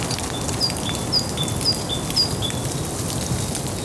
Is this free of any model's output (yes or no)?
yes